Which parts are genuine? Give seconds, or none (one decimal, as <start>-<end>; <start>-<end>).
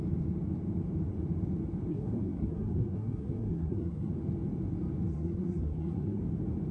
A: 0.0-1.9; 4.1-5.1; 6.2-6.7